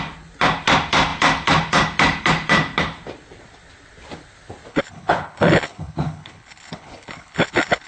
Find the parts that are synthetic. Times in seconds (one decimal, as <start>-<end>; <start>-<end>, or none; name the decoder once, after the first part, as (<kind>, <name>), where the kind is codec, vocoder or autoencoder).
4.7-7.9 (codec, HILCodec)